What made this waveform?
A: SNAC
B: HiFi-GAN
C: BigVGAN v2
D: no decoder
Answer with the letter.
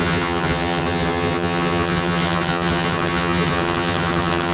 B